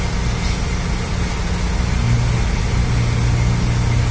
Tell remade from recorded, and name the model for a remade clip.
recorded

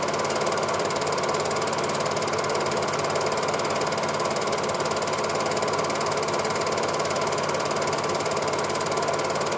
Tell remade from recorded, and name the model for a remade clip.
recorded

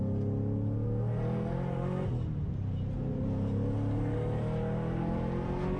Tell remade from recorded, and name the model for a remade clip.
recorded